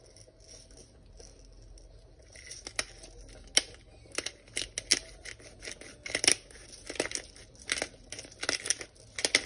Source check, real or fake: real